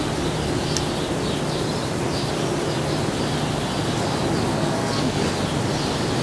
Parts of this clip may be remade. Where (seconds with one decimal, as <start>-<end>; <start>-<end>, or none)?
4.5-5.2